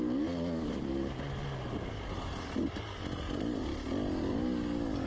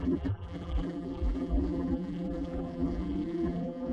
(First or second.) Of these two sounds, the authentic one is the first